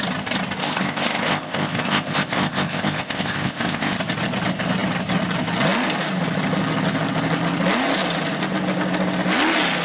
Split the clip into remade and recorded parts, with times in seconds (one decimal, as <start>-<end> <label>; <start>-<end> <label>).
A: 0.0-0.6 recorded; 0.6-4.0 remade; 4.0-9.8 recorded

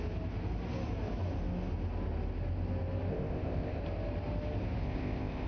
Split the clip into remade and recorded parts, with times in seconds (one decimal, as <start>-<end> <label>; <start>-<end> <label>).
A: 0.0-3.1 recorded; 3.1-3.8 remade; 3.8-4.8 recorded; 4.8-5.5 remade

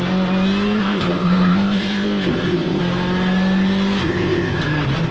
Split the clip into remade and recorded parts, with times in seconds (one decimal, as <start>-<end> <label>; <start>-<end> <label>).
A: 0.0-0.8 recorded; 0.8-2.8 remade; 2.8-4.1 recorded; 4.1-4.6 remade; 4.6-5.1 recorded

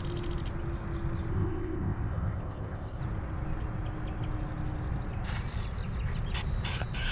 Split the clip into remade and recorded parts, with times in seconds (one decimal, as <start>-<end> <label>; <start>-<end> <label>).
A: 0.0-1.3 recorded; 1.3-3.0 remade; 3.0-7.1 recorded